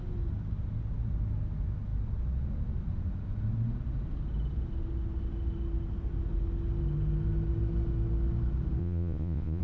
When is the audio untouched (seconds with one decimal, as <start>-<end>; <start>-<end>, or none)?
0.0-8.8